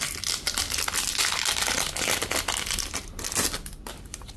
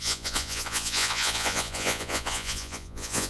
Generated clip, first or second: second